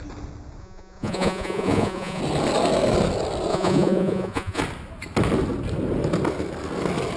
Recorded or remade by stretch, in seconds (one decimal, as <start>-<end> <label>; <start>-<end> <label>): 0.0-0.6 recorded; 0.6-2.2 remade; 2.2-3.5 recorded; 3.5-4.6 remade; 4.6-7.2 recorded

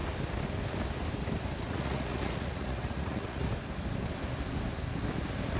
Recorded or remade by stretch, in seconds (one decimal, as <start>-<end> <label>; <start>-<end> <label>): 0.0-1.7 recorded; 1.7-3.4 remade; 3.4-5.6 recorded